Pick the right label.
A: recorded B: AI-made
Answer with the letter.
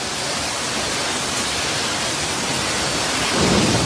A